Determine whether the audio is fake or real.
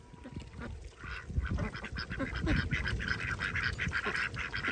real